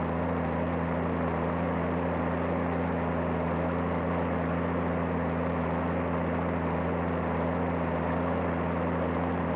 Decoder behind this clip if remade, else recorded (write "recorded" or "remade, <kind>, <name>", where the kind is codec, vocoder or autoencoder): recorded